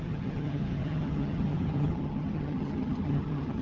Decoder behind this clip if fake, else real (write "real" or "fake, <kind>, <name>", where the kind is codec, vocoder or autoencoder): fake, vocoder, HiFi-GAN